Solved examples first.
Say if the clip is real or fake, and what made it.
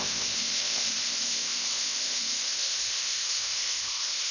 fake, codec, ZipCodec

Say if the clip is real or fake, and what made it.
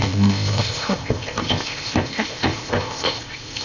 fake, codec, ZipCodec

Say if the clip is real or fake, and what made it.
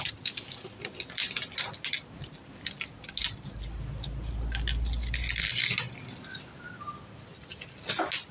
real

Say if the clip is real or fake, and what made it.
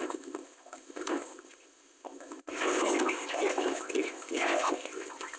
fake, codec, ZipCodec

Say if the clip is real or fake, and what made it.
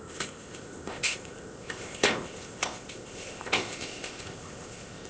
fake, codec, ZipCodec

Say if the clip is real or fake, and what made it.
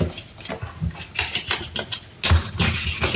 real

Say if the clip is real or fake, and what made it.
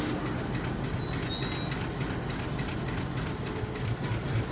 real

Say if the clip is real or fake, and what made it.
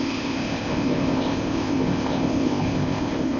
fake, codec, ZipCodec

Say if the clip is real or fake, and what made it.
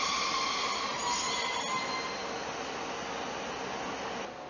real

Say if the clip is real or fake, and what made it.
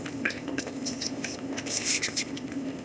fake, codec, ZipCodec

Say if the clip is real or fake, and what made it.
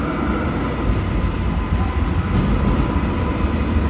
real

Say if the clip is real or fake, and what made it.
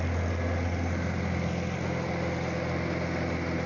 real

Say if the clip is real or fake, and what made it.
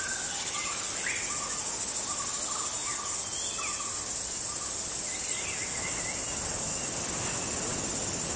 real